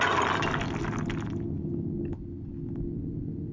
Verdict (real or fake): real